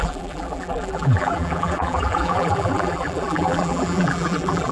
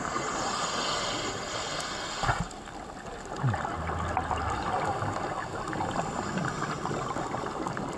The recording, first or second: second